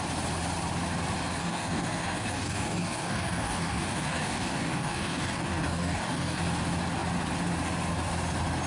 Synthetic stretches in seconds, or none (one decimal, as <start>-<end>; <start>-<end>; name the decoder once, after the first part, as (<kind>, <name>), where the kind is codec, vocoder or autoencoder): 1.4-6.4 (codec, DAC)